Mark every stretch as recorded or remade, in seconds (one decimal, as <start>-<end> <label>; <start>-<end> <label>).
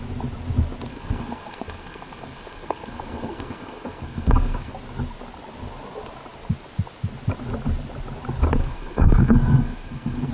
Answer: 0.0-0.9 recorded; 0.9-4.7 remade; 4.7-8.6 recorded; 8.6-10.3 remade